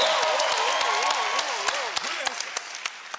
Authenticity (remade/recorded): recorded